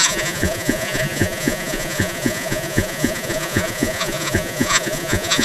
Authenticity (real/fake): fake